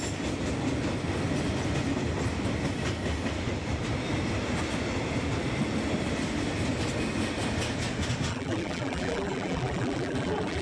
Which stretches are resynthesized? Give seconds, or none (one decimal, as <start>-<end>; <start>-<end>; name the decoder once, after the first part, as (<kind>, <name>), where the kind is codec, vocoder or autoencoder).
8.3-10.6 (vocoder, BigVGAN v2)